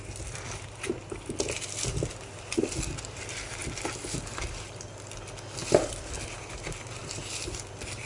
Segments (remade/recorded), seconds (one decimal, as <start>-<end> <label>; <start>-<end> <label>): 0.0-5.6 recorded; 5.6-6.2 remade; 6.2-7.0 recorded; 7.0-8.1 remade